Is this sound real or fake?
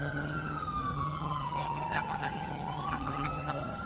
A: fake